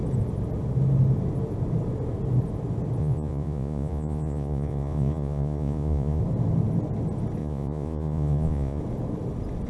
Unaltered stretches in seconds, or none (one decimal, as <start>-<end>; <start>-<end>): 0.0-3.0; 6.2-7.4; 8.8-9.7